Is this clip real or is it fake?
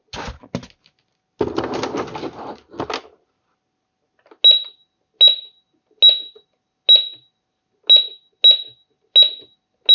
real